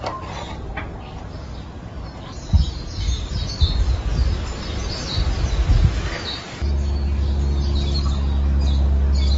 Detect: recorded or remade recorded